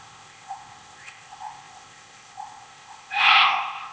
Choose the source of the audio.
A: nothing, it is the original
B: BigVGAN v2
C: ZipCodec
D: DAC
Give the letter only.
C